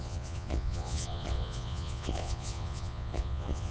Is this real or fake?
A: fake